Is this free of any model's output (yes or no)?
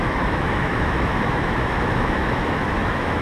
no